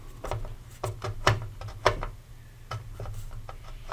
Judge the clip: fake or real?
real